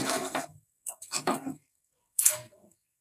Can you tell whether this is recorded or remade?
remade